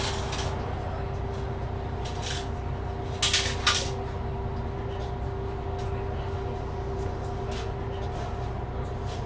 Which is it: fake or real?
real